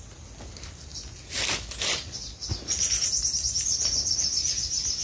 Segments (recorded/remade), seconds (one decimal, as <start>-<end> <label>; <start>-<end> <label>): 0.0-5.0 recorded